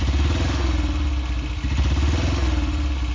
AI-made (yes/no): no